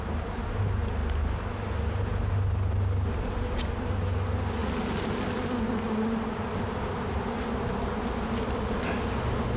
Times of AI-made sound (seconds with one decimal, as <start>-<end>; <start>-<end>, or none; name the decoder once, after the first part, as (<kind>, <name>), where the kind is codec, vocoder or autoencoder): none